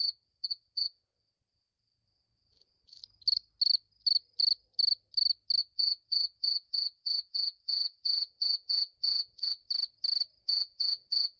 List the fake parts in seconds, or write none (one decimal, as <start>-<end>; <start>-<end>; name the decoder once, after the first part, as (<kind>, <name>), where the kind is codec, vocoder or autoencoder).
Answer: 0.0-3.0 (vocoder, Vocos); 5.6-9.6; 10.4-11.4